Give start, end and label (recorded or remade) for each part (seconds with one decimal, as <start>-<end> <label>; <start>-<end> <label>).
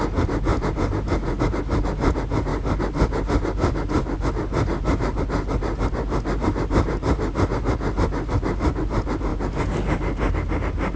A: 0.0-0.5 recorded; 0.5-1.4 remade; 1.4-11.0 recorded